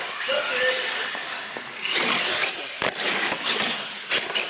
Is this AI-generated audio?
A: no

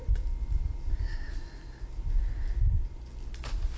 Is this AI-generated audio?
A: no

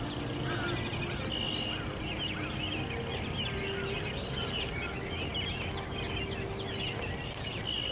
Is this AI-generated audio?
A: no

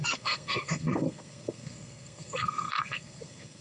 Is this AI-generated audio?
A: yes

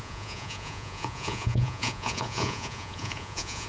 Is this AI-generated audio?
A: yes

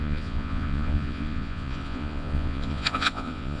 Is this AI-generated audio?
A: yes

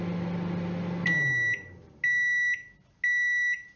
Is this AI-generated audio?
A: no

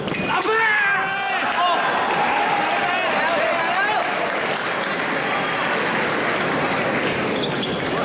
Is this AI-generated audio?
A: no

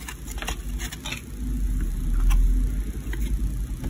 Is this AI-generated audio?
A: no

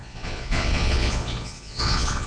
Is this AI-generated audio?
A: yes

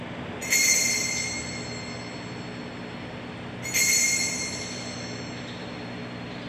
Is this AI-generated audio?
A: no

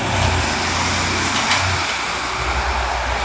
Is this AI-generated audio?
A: no